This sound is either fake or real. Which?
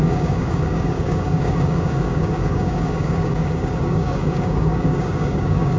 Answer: fake